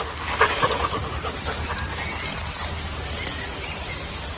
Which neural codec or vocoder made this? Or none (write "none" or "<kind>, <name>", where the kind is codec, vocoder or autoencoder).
none